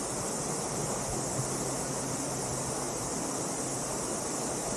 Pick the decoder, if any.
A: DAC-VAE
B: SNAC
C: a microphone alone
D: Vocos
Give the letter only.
C